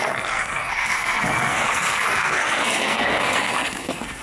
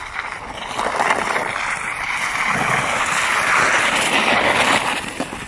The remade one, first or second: first